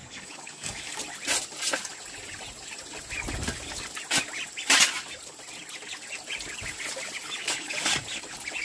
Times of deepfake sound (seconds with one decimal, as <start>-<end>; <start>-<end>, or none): 0.0-1.0; 7.4-7.9